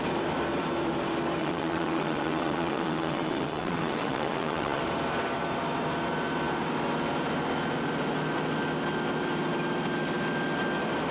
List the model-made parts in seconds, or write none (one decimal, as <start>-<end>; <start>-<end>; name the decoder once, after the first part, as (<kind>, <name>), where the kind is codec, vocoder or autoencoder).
1.4-4.8 (vocoder, WaveNeXt)